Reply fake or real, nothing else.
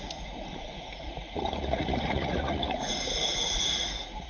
fake